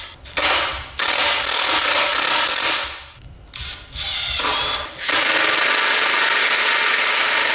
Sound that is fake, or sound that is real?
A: real